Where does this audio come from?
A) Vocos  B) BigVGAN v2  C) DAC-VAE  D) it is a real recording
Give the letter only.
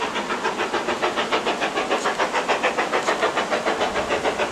D